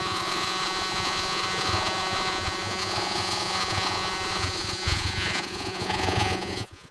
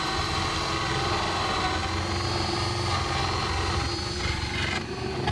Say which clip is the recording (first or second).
second